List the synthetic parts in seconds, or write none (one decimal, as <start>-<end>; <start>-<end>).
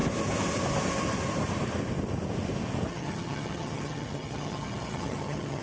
2.9-5.6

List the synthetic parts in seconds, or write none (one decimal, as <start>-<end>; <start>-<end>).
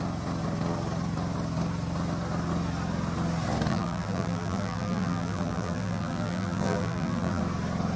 3.7-7.4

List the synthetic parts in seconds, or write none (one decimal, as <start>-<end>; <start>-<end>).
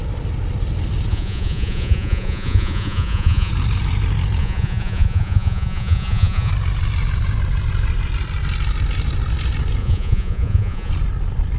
1.1-3.5; 4.4-6.5; 9.8-10.9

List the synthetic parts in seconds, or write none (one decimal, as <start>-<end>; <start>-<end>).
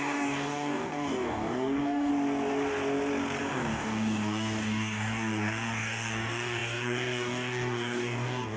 0.0-2.1; 3.4-8.6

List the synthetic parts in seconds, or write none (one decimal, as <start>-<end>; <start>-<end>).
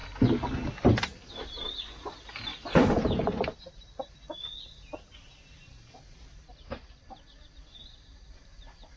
1.3-2.5; 4.7-9.0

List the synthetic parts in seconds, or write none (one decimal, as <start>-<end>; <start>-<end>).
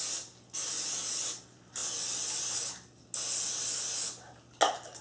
none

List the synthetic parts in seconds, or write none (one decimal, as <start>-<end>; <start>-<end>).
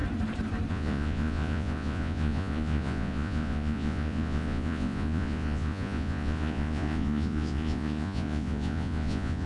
0.7-9.5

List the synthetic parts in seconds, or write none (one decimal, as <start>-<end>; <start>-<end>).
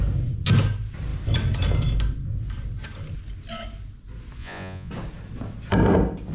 4.4-4.9